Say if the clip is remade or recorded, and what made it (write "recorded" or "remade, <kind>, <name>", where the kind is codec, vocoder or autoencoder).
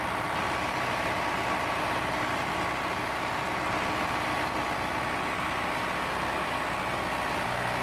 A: recorded